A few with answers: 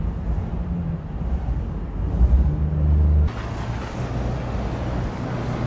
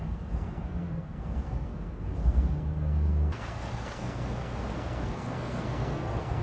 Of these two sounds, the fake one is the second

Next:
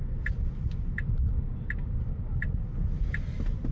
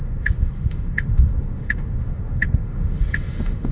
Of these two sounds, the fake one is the second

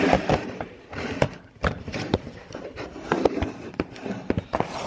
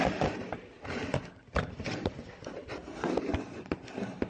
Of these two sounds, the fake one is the first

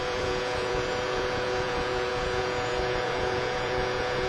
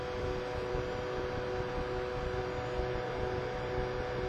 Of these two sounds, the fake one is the first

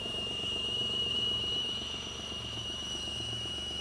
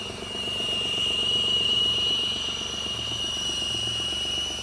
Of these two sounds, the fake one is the first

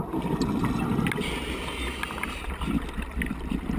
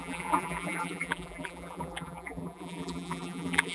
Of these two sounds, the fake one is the second